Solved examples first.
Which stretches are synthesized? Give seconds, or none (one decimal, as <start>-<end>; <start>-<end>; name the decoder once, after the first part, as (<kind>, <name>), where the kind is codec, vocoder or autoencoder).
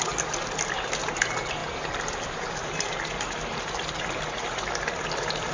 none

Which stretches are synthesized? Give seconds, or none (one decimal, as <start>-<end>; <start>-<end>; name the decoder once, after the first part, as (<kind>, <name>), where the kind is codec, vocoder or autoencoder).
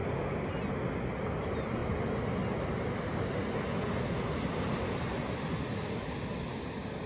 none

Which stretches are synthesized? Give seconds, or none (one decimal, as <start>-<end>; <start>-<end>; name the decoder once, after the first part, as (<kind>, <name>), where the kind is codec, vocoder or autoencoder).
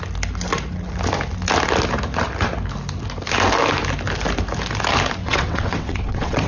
5.2-6.5 (vocoder, WaveNeXt)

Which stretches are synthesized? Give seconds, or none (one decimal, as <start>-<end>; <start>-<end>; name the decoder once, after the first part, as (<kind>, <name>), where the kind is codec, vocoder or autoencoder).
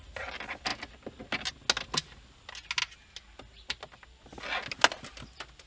none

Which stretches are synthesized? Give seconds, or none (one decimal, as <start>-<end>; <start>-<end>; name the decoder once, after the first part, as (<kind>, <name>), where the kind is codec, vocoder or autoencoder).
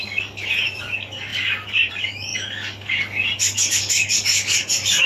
0.0-5.1 (codec, DAC)